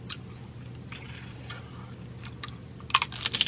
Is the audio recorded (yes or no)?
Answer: yes